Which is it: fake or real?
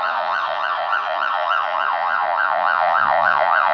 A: fake